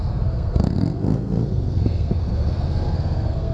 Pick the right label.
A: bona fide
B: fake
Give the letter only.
B